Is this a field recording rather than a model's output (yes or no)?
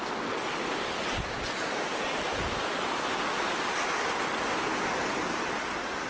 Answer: yes